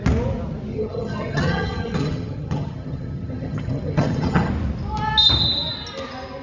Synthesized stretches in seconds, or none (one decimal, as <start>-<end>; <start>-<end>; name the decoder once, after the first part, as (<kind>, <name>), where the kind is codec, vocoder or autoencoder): 0.7-4.5 (vocoder, HiFi-GAN)